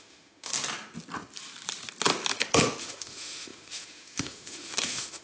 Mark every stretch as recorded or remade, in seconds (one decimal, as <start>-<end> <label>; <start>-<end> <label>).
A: 0.0-0.5 remade; 0.5-2.8 recorded; 2.8-5.2 remade